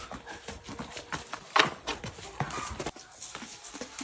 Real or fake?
real